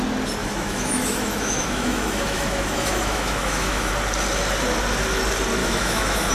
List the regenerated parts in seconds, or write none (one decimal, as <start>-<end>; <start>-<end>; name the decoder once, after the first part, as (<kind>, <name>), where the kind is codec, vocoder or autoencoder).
0.4-3.9 (autoencoder, DAC-VAE); 5.6-6.3